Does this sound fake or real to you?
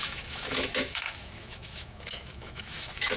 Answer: fake